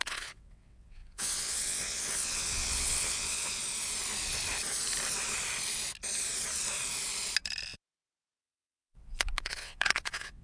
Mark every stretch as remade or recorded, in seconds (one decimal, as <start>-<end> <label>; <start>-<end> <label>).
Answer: 0.0-3.6 remade; 3.6-8.4 recorded; 8.4-10.4 remade